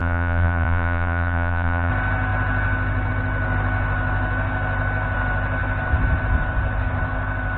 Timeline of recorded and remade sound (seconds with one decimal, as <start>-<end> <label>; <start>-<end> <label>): 0.0-1.9 remade; 1.9-7.6 recorded